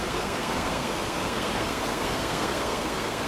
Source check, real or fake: fake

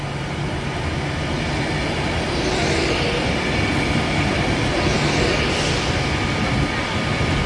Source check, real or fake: real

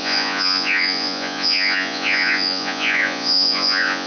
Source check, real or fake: fake